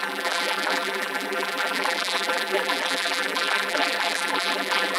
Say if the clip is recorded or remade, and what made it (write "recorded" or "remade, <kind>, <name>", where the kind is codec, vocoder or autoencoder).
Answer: remade, vocoder, BigVGAN v2